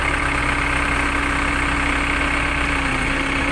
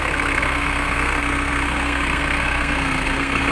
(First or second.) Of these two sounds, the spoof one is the second